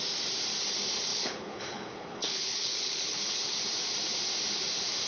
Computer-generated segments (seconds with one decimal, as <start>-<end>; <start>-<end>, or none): 1.1-3.6

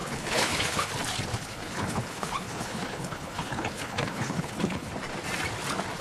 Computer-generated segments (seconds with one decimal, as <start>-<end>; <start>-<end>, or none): 0.0-0.9; 1.3-4.9

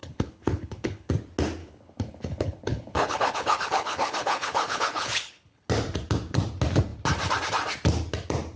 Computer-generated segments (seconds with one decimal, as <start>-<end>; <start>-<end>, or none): 0.0-1.1; 1.6-5.7

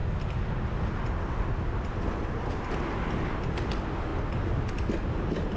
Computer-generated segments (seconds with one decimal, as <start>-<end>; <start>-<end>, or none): none

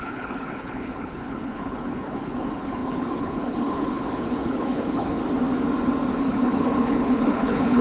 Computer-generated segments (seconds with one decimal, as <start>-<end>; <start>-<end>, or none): 0.0-5.2; 6.2-7.8

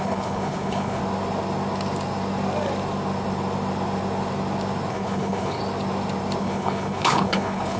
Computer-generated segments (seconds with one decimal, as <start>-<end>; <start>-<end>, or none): 0.0-1.0; 4.9-5.6; 6.4-7.8

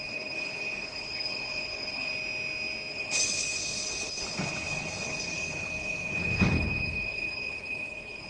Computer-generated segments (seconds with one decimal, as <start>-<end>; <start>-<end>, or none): 0.0-2.1; 2.9-8.3